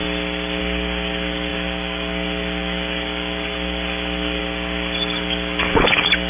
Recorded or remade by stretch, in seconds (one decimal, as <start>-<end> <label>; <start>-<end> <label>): 0.0-0.6 recorded; 0.6-6.3 remade